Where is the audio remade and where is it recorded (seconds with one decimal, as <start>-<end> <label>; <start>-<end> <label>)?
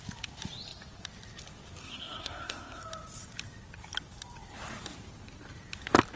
0.0-1.8 recorded; 1.8-2.8 remade; 2.8-6.2 recorded